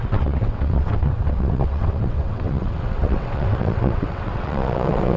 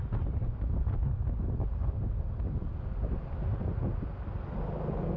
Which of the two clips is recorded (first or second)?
second